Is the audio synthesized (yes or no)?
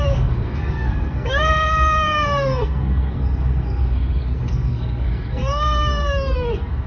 yes